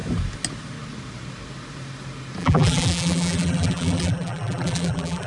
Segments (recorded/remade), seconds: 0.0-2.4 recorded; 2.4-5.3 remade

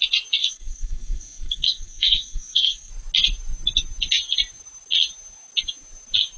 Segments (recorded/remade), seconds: 0.0-0.4 recorded; 0.4-2.9 remade; 2.9-6.4 recorded

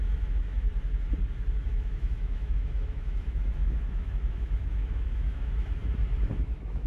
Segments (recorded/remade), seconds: 0.0-0.7 remade; 0.7-1.6 recorded; 1.6-5.8 remade; 5.8-6.3 recorded; 6.3-6.9 remade

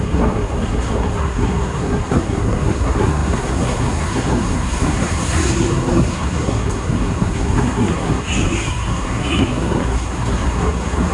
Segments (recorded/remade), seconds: 0.0-11.1 remade

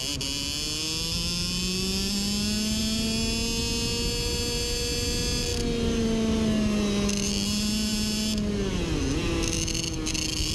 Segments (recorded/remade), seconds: 0.0-10.5 recorded